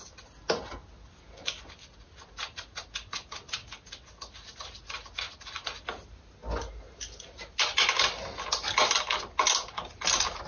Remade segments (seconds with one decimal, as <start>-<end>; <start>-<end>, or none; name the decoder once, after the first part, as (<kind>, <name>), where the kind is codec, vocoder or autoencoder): none